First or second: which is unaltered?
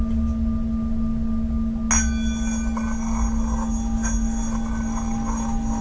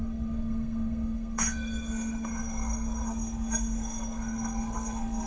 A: first